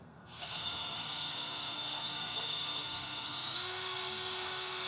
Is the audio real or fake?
fake